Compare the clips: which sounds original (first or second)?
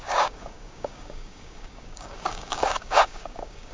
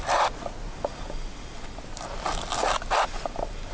second